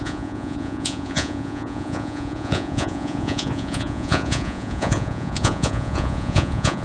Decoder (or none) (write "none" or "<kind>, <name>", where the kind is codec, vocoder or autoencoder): vocoder, Vocos